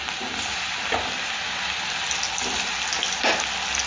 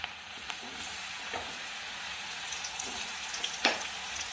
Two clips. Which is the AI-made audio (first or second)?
second